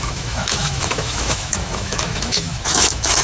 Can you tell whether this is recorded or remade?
remade